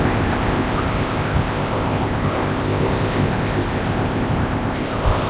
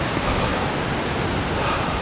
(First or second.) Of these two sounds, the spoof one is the first